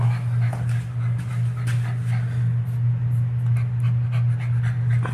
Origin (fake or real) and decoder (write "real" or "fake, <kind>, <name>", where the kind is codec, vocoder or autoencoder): real